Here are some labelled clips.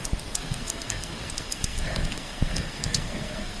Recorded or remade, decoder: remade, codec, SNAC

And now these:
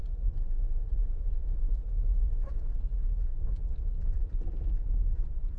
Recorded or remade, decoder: remade, vocoder, Vocos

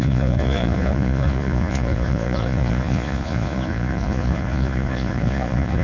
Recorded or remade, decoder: remade, vocoder, Vocos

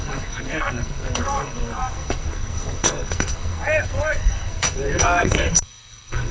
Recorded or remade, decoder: remade, codec, SNAC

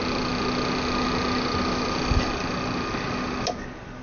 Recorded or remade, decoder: recorded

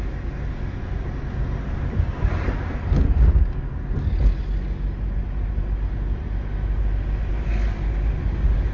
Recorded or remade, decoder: recorded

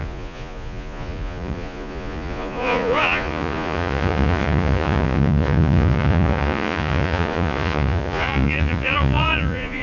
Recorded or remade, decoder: remade, vocoder, Vocos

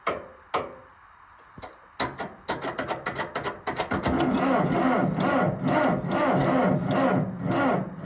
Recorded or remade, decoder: recorded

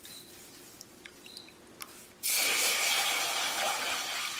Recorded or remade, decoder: recorded